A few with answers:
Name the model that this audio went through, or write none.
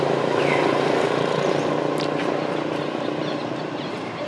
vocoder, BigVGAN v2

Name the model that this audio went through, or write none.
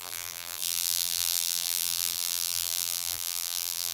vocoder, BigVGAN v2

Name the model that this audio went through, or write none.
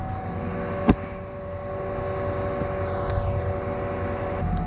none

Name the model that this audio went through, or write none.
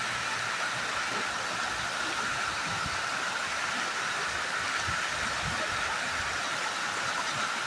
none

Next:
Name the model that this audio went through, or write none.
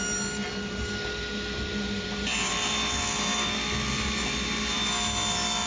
none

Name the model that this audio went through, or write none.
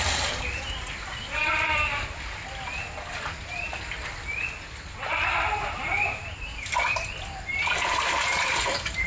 vocoder, BigVGAN v2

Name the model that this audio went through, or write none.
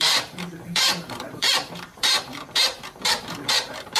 vocoder, BigVGAN v2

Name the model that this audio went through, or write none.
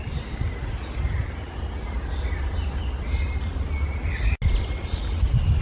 none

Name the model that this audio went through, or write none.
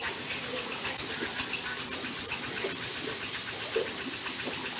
none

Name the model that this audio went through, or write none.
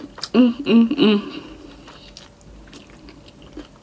none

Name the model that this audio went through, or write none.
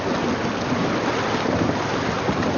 vocoder, BigVGAN v2